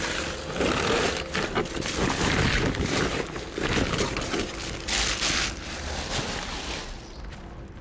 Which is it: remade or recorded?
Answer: recorded